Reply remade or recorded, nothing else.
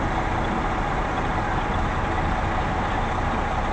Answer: recorded